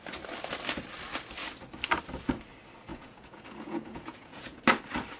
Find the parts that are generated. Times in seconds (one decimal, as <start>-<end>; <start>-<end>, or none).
2.9-4.6